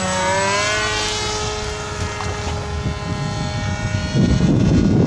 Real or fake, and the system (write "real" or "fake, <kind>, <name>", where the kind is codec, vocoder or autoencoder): real